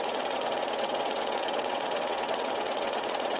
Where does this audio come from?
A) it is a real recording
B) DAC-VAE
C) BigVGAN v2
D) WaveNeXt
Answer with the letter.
D